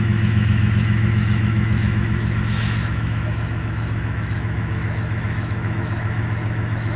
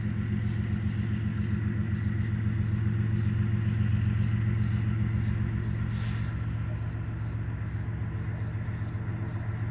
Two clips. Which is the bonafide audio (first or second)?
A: second